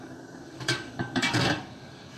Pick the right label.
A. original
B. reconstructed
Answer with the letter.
B